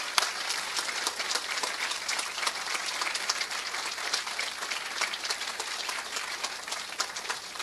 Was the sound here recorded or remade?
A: remade